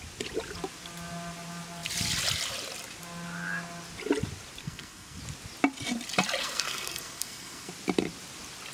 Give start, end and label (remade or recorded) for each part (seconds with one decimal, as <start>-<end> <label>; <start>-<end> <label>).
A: 0.0-4.6 recorded; 4.6-5.2 remade; 5.2-6.4 recorded; 6.4-7.7 remade; 7.7-8.7 recorded